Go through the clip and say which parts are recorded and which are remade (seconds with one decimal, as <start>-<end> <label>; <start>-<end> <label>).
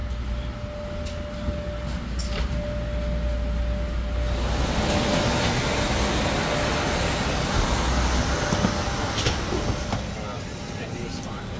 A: 0.0-11.6 recorded